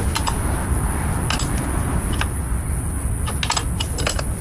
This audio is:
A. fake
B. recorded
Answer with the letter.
B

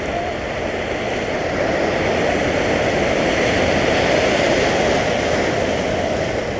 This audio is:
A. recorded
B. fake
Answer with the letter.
A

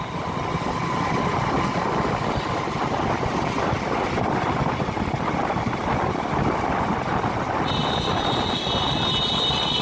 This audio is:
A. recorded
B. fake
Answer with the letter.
A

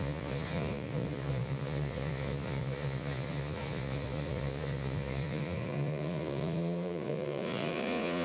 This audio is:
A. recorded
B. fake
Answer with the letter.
B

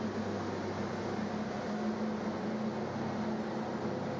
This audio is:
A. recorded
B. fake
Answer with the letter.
A